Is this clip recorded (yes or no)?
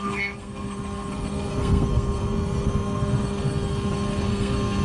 no